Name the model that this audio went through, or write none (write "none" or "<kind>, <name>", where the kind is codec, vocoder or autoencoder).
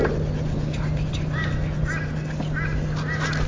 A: none